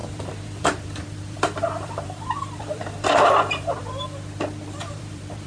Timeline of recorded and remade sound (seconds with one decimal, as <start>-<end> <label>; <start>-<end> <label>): 0.0-3.8 remade; 3.8-4.8 recorded; 4.8-5.5 remade